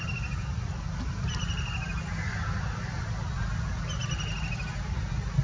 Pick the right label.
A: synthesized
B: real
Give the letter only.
B